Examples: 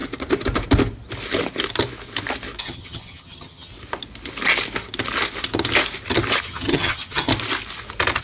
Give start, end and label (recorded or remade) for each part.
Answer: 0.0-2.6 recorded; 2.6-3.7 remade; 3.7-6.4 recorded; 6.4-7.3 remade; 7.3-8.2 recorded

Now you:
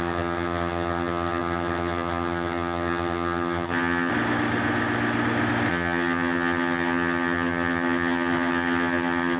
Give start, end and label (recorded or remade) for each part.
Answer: 0.0-4.1 remade; 4.1-5.7 recorded; 5.7-9.4 remade

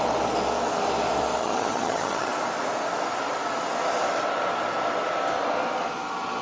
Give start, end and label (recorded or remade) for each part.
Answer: 0.0-1.4 recorded; 1.4-2.3 remade; 2.3-6.4 recorded

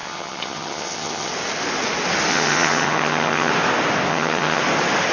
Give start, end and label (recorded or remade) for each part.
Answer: 0.0-1.3 remade; 1.3-2.3 recorded; 2.3-3.5 remade; 3.5-4.1 recorded; 4.1-4.6 remade; 4.6-5.1 recorded